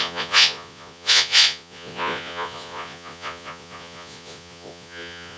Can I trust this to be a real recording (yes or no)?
no